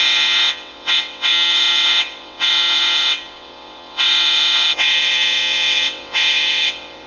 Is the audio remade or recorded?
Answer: remade